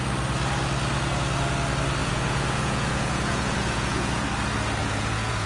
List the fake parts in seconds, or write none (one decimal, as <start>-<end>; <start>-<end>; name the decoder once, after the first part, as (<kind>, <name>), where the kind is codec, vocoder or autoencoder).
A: 2.0-4.2 (vocoder, Vocos); 4.8-5.5